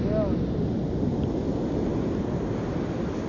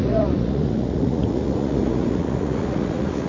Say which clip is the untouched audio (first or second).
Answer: first